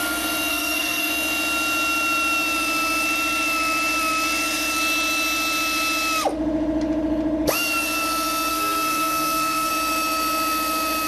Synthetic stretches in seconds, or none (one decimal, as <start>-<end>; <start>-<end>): 0.5-1.1; 8.5-9.7